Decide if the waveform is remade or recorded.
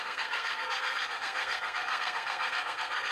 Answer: remade